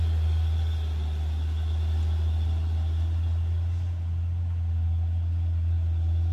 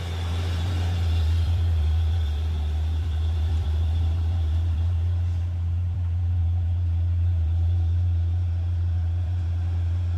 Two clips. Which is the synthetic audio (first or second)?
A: second